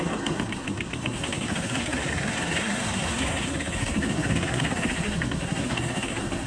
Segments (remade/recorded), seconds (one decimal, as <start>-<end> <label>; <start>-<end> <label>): 0.0-6.5 remade